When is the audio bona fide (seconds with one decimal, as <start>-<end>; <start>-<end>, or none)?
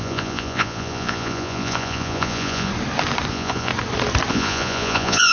2.7-3.3; 3.7-4.3